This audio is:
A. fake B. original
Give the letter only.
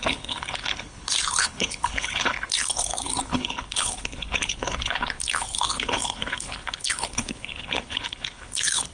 A